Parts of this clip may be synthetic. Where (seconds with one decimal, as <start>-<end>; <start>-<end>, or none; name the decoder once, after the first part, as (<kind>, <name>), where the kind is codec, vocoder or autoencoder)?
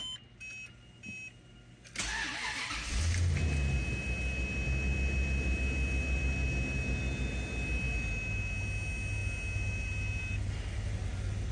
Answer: none